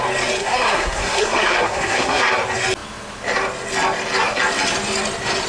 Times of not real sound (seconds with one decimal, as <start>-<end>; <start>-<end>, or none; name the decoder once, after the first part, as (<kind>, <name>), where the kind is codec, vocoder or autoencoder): 0.4-2.2 (codec, SNAC)